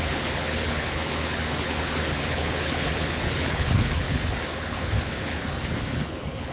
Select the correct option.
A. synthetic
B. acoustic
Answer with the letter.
A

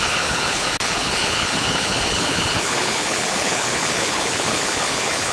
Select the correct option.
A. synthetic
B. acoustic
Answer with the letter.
A